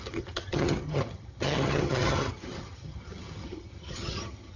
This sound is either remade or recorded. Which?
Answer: remade